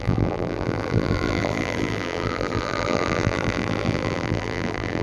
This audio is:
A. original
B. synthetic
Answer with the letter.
B